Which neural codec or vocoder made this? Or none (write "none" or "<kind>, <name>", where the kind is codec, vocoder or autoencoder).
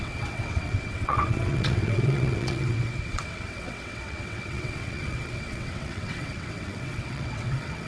vocoder, WaveNeXt